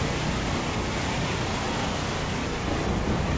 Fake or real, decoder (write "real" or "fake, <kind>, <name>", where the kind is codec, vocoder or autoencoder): real